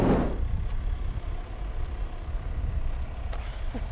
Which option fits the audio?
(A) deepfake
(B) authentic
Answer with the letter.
B